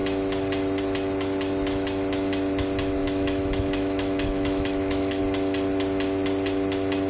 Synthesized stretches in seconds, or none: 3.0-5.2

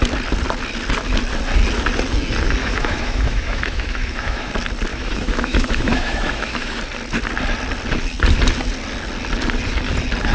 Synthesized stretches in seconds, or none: 2.6-4.5; 4.9-6.8